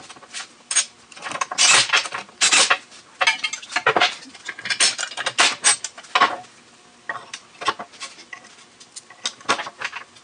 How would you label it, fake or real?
real